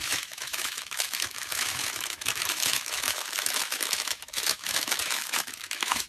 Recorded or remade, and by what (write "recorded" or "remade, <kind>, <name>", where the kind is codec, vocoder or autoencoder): remade, autoencoder, DAC-VAE